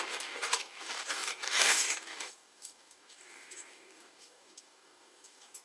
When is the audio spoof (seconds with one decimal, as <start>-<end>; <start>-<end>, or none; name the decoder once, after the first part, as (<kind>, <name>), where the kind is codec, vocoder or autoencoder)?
0.0-5.6 (codec, DAC)